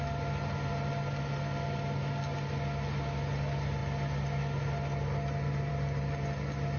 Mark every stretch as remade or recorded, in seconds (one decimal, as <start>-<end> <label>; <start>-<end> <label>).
0.0-6.8 recorded